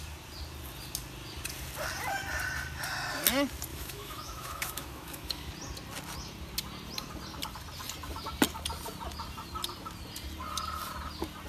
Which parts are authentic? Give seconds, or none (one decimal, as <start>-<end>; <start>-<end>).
0.0-3.7; 5.5-11.5